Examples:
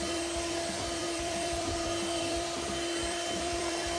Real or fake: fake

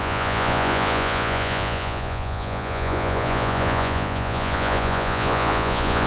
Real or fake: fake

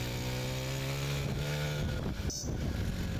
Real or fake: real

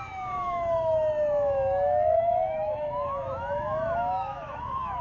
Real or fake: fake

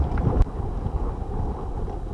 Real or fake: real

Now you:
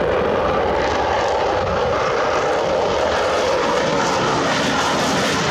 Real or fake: real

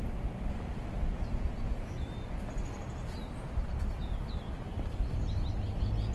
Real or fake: real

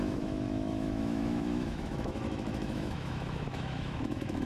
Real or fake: fake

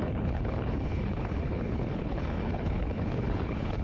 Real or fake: fake